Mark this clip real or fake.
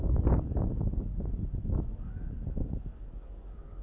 fake